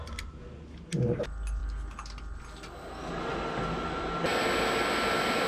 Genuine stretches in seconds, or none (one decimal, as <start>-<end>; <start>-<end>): 0.0-5.5